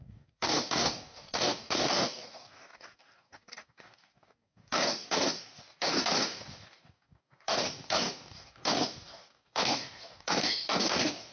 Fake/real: fake